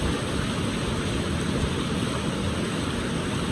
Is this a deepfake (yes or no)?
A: no